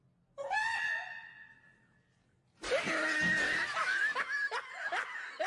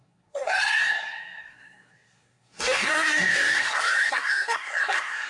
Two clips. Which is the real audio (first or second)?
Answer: first